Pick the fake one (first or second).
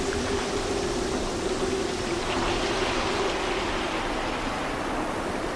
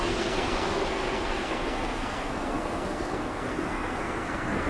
second